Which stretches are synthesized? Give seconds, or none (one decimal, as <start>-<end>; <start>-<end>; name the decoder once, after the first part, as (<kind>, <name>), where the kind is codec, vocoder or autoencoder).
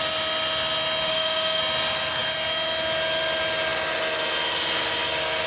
1.1-1.6 (autoencoder, DAC-VAE)